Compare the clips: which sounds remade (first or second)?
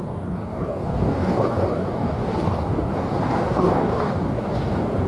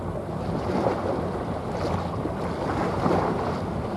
first